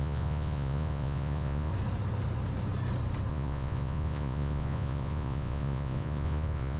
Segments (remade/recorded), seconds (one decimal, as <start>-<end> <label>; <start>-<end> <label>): 0.0-1.7 remade; 1.7-3.3 recorded; 3.3-6.8 remade